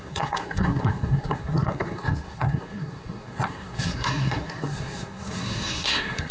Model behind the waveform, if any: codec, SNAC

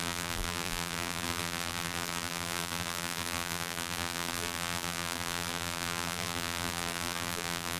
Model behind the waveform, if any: vocoder, BigVGAN v2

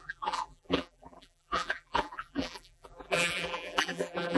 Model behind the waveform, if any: vocoder, BigVGAN v2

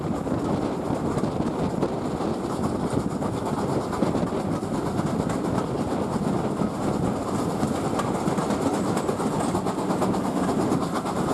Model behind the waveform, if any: none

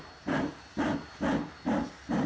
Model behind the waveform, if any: none